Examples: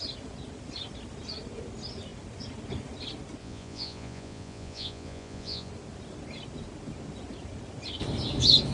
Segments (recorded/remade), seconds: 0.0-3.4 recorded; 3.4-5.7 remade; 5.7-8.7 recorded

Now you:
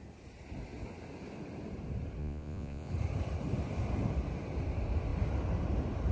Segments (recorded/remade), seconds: 0.0-2.2 recorded; 2.2-2.9 remade; 2.9-6.1 recorded

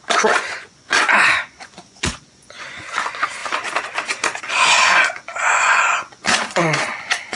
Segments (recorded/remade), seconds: 0.0-3.4 remade; 3.4-4.4 recorded; 4.4-7.4 remade

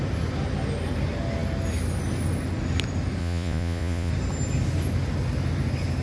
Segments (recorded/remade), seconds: 0.0-3.2 recorded; 3.2-4.1 remade; 4.1-6.0 recorded